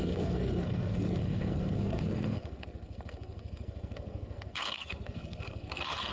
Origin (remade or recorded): remade